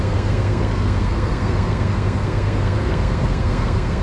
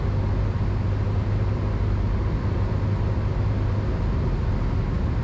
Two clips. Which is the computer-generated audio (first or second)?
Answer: first